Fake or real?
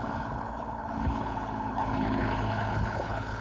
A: fake